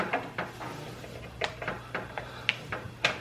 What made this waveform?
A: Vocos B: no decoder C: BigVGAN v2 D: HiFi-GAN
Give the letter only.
B